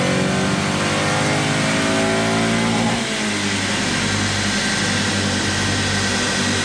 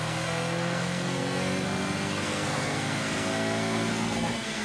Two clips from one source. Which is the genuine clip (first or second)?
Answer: first